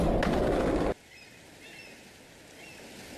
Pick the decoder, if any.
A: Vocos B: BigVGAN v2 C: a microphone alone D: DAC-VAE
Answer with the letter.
C